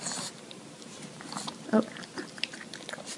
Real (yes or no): yes